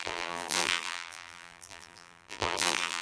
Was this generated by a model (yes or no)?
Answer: yes